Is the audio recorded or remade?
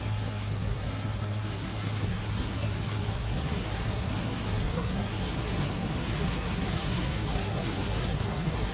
remade